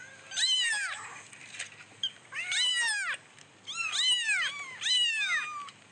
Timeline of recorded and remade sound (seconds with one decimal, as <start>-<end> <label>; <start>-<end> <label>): 0.0-5.9 recorded